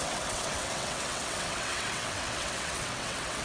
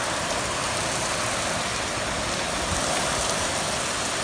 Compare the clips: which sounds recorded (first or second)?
second